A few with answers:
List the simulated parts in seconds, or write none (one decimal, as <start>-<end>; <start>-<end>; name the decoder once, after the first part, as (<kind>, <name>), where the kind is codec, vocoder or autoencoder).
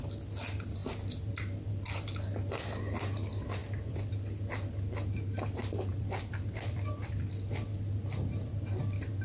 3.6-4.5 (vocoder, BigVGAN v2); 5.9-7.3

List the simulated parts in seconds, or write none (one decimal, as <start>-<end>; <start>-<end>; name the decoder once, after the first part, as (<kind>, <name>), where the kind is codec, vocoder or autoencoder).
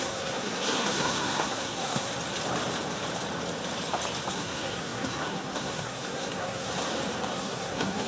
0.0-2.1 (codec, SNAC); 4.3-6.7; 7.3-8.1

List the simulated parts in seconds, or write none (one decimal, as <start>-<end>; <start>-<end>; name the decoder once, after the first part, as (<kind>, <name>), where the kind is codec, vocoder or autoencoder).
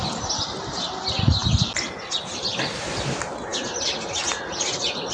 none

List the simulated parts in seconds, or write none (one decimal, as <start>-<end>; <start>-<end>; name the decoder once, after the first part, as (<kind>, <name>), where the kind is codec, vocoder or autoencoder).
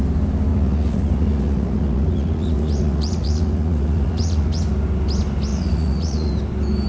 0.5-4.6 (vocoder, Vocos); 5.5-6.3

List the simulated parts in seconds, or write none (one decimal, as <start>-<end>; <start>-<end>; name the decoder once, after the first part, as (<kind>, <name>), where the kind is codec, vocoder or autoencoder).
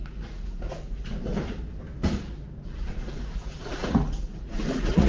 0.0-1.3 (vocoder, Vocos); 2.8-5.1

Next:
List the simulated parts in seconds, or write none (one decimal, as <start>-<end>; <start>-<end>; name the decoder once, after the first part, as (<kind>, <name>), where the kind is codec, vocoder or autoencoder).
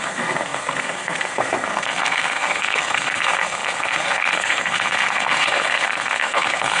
0.0-6.8 (codec, SNAC)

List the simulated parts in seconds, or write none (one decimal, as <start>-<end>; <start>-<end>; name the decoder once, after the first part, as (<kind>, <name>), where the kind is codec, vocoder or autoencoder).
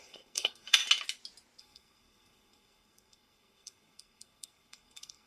0.0-0.8 (codec, SNAC); 1.6-5.3